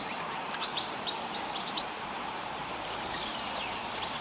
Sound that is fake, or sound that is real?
fake